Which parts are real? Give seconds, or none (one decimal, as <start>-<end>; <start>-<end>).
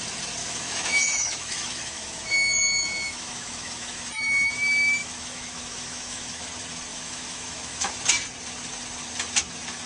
0.0-0.4; 4.5-5.0; 6.4-6.9; 7.9-9.9